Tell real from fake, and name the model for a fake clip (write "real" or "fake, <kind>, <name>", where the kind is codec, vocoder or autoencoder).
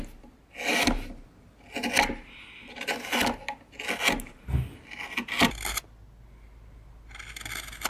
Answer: real